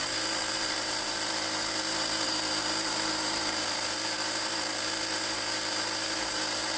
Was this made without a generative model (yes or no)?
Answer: no